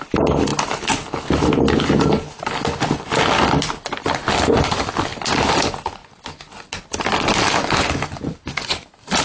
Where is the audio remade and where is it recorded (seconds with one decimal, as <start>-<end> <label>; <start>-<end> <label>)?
0.0-3.6 recorded; 3.6-4.5 remade; 4.5-9.2 recorded